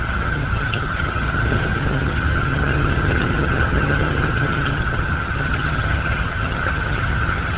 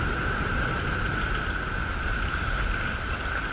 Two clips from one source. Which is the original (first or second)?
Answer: second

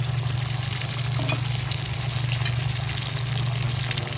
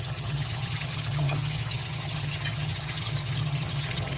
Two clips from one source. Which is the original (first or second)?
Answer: first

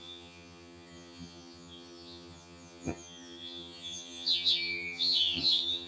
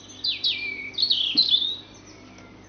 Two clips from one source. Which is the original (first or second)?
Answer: second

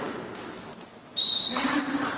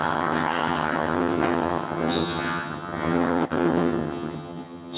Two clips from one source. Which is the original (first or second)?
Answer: first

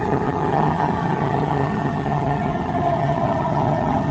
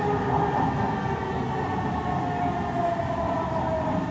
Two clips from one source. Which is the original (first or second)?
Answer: second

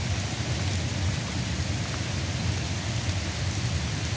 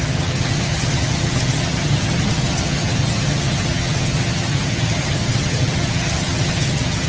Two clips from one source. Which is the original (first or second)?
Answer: first